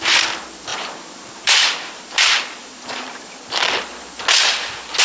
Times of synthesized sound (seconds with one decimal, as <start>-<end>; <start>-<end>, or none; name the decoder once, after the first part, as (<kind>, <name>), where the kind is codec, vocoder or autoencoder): 0.7-3.7 (vocoder, BigVGAN v2)